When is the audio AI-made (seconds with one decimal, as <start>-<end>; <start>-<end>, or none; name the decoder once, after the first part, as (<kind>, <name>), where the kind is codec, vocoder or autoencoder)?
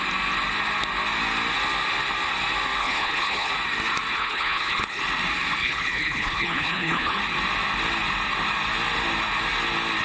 2.8-3.5 (codec, HILCodec); 4.1-5.0; 5.6-7.2